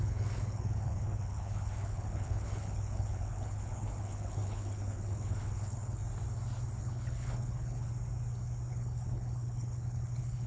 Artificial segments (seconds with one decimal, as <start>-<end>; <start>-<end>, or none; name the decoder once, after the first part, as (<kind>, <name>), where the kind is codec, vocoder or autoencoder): 0.0-6.0 (codec, HILCodec); 6.8-7.9; 8.7-10.5